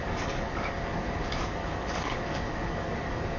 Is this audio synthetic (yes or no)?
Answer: yes